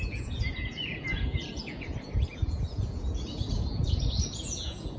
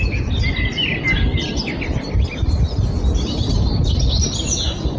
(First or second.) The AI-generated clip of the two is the first